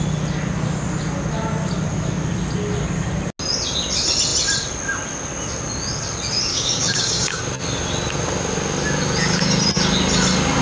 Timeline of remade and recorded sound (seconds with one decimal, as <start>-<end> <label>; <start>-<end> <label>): 0.0-6.5 recorded; 6.5-7.4 remade; 7.4-10.6 recorded